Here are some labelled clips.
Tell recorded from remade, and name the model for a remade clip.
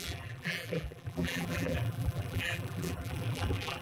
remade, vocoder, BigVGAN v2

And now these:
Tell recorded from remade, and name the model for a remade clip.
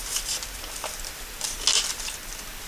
recorded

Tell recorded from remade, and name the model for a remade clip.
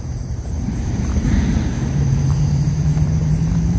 remade, vocoder, BigVGAN v2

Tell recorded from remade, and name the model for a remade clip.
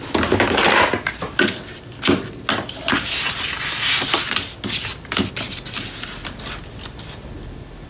recorded